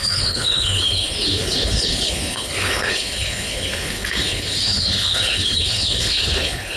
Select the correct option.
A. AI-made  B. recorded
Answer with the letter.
A